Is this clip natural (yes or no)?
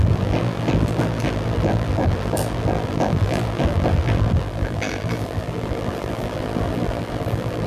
no